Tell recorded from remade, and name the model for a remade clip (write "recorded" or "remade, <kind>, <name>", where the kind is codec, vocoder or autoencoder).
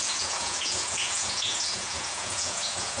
remade, vocoder, Vocos